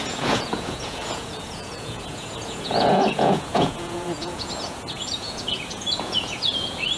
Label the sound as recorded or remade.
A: remade